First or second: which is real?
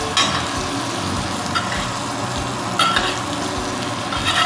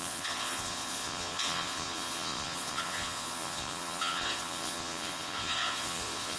first